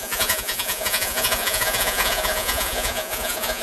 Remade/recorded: remade